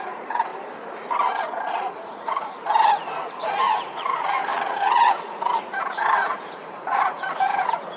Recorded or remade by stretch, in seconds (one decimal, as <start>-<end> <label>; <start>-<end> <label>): 0.0-0.5 remade; 0.5-1.4 recorded; 1.4-8.0 remade